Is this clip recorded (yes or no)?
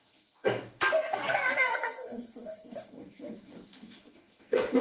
no